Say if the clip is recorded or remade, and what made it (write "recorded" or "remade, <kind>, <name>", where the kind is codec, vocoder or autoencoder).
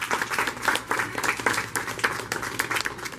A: recorded